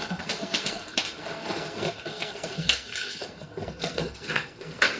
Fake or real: fake